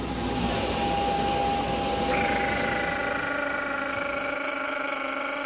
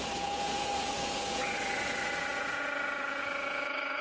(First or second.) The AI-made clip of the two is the second